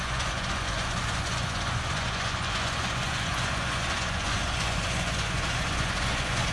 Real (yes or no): no